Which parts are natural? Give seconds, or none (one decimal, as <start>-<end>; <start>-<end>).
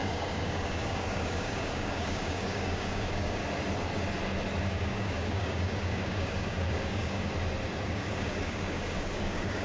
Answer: 3.4-4.6; 7.3-7.9